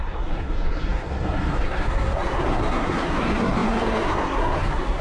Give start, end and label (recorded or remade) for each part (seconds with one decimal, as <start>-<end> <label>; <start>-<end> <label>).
0.0-5.0 remade